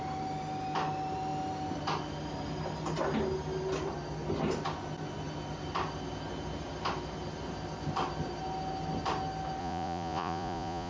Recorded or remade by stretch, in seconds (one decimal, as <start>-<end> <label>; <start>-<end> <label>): 0.0-9.6 recorded; 9.6-10.9 remade